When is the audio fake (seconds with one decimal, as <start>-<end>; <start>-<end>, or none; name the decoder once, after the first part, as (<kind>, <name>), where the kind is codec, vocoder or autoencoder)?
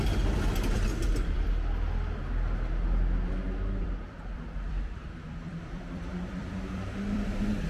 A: 0.0-0.9 (vocoder, BigVGAN v2); 3.8-7.7